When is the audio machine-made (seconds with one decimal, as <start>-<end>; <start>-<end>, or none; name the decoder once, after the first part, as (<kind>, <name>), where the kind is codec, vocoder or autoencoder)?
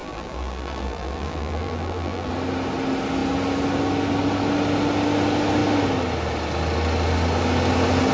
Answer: 0.0-2.3 (vocoder, BigVGAN v2)